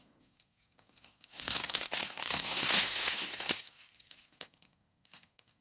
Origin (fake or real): fake